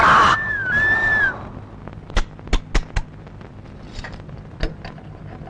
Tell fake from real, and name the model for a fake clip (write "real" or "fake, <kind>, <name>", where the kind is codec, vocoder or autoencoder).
real